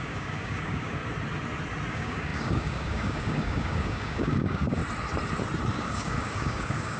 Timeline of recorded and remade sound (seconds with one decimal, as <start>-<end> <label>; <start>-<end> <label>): 0.0-1.0 remade; 1.0-1.9 recorded; 1.9-4.8 remade; 4.8-5.7 recorded; 5.7-7.0 remade